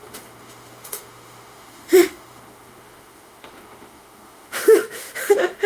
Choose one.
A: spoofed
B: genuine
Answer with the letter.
A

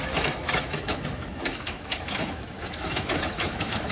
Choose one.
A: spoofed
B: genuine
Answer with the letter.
A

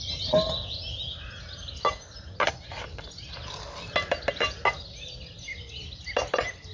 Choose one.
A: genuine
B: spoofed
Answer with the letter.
A